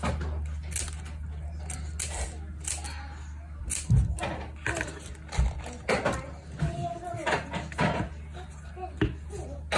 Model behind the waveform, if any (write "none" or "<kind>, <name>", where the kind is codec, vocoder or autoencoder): none